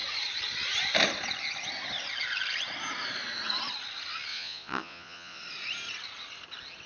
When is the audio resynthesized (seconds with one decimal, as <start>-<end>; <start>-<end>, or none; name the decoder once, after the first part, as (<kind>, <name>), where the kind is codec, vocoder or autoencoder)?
4.3-5.4 (vocoder, Vocos)